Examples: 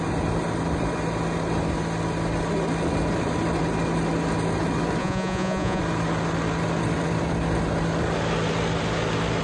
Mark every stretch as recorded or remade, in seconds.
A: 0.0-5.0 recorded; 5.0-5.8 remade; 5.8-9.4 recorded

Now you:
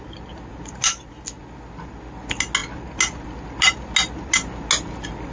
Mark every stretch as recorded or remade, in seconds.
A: 0.0-5.3 recorded

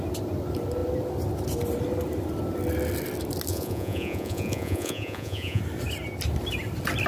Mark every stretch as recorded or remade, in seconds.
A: 0.0-3.5 recorded; 3.5-5.6 remade; 5.6-7.1 recorded

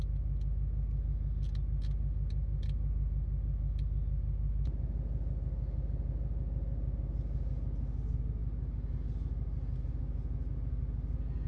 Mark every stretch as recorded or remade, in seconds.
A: 0.0-11.5 recorded